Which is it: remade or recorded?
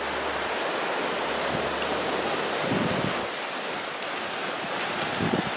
recorded